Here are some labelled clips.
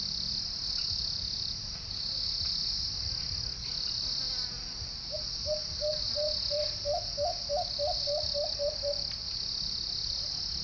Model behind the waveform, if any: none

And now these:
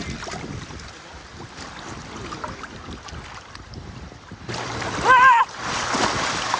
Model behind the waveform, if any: vocoder, BigVGAN v2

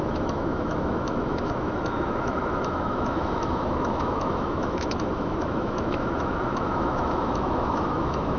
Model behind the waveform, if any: autoencoder, DAC-VAE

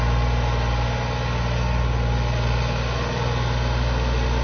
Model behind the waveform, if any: none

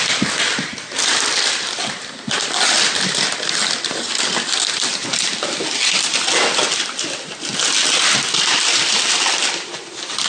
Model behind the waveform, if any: none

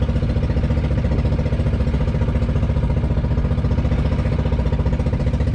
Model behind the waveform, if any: none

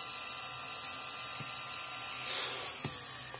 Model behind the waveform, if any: none